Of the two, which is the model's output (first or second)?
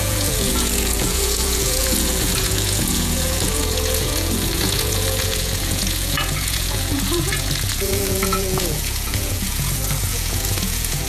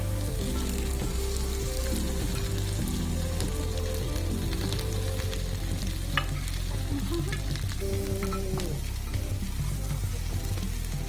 first